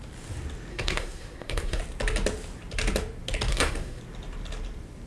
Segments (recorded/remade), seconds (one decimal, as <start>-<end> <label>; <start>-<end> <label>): 0.0-0.7 recorded; 0.7-1.8 remade; 1.8-3.5 recorded; 3.5-4.0 remade; 4.0-5.1 recorded